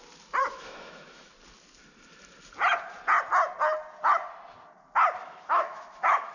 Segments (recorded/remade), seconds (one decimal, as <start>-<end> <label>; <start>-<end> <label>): 0.0-0.4 recorded; 0.4-1.3 remade; 1.3-5.2 recorded; 5.2-6.3 remade